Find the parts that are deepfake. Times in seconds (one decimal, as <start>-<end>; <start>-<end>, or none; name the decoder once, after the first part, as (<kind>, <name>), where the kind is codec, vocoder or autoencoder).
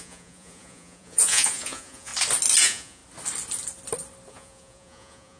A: 0.0-2.1 (vocoder, Vocos); 2.6-3.0; 4.3-5.4